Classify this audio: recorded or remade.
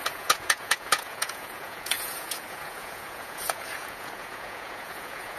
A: remade